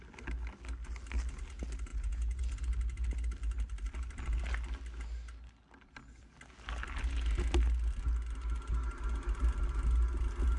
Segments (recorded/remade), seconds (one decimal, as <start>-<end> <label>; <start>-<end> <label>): 0.0-1.9 recorded; 1.9-2.4 remade; 2.4-10.6 recorded